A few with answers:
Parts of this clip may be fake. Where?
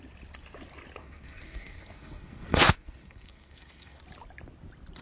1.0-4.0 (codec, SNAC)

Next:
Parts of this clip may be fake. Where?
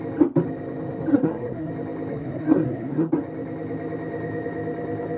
1.1-1.7 (codec, SNAC); 2.1-3.1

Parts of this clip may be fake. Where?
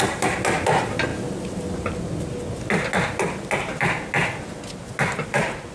none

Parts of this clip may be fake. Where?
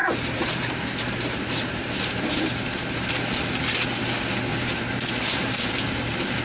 0.0-3.1 (vocoder, BigVGAN v2); 4.5-5.7